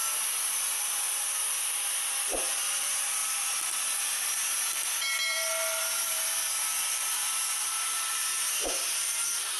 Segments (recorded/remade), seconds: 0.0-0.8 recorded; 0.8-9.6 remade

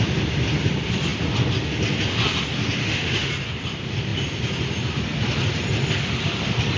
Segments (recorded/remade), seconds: 0.0-2.8 recorded; 2.8-3.3 remade; 3.3-6.8 recorded

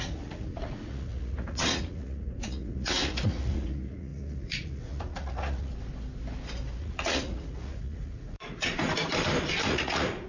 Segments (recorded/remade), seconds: 0.0-5.7 remade; 5.7-6.8 recorded; 6.8-8.8 remade; 8.8-9.7 recorded; 9.7-10.3 remade

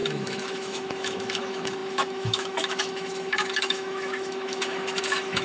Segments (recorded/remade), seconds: 0.0-5.4 remade

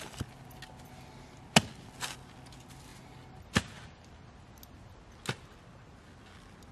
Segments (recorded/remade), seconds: 0.0-6.7 recorded